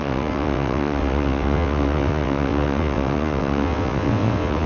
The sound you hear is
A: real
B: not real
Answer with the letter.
B